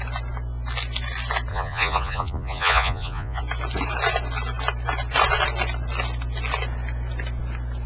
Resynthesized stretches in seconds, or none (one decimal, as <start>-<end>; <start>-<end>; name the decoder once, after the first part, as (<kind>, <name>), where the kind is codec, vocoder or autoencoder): 1.5-3.4 (vocoder, Vocos)